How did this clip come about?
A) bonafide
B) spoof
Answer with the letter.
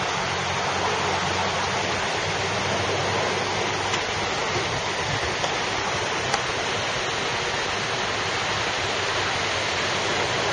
A